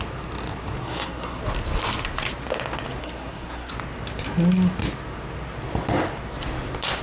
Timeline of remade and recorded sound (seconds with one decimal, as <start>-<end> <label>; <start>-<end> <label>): 0.0-0.8 recorded; 0.8-1.4 remade; 1.4-3.0 recorded; 3.0-3.7 remade; 3.7-7.0 recorded